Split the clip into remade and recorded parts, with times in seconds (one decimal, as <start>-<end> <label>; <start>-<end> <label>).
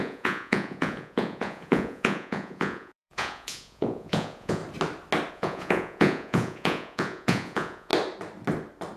0.0-4.6 remade; 4.6-5.3 recorded; 5.3-7.9 remade; 7.9-9.0 recorded